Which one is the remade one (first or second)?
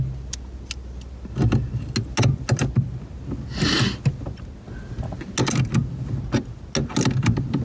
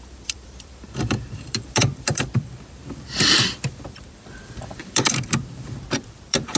second